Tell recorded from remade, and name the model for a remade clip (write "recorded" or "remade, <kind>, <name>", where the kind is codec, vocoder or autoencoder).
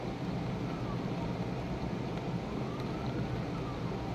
recorded